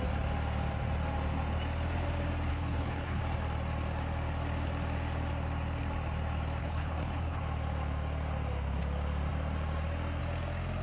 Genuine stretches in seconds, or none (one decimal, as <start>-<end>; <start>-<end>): 0.0-2.5; 3.2-6.6; 7.4-10.8